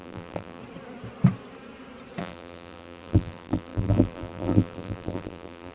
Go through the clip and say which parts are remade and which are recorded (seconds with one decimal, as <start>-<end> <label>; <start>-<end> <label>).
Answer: 0.0-0.6 remade; 0.6-2.2 recorded; 2.2-5.7 remade